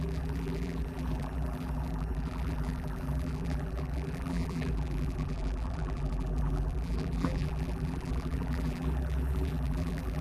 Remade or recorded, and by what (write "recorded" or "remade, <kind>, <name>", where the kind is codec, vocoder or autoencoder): remade, vocoder, BigVGAN v2